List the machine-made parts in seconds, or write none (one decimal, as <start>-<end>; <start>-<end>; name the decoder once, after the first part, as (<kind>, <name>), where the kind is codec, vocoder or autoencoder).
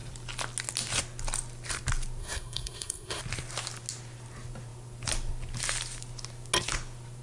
2.2-3.2 (codec, SNAC)